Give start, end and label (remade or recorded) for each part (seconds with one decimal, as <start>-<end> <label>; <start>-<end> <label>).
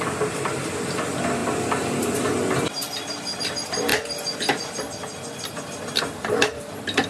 0.0-7.1 recorded